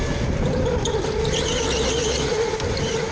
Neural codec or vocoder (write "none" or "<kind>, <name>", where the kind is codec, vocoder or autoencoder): none